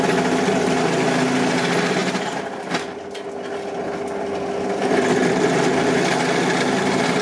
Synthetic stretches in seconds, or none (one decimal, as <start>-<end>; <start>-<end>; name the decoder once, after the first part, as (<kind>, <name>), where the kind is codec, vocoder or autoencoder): none